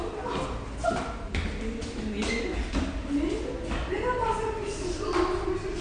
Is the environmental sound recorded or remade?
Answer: recorded